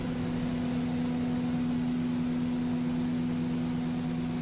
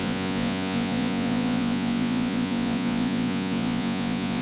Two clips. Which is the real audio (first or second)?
first